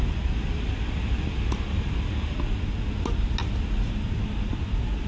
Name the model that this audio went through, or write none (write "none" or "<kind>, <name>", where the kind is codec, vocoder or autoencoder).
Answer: none